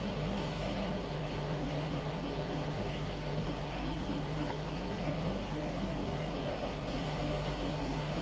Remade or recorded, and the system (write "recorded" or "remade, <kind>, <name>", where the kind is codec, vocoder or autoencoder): remade, codec, SNAC